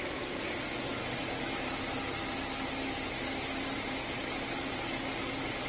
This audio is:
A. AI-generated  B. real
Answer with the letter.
B